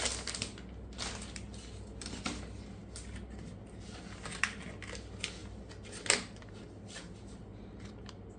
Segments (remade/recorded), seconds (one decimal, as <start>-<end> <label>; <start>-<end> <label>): 0.0-8.4 recorded